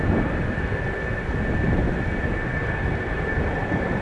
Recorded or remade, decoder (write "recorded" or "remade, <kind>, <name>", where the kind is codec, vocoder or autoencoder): recorded